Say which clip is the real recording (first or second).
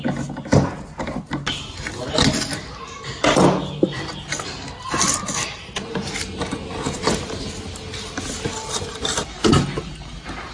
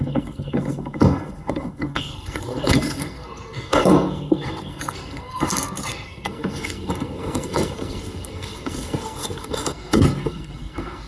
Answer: first